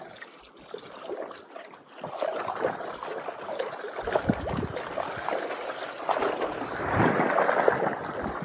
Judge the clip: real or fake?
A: real